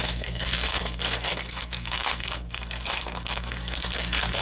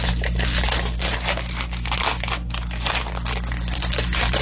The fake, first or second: first